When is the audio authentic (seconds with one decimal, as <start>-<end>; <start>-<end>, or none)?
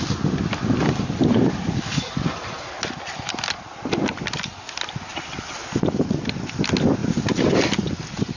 0.0-8.4